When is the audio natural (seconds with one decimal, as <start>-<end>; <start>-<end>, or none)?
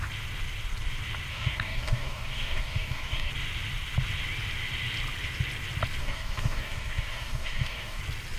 0.0-1.3; 3.3-6.0; 8.0-8.4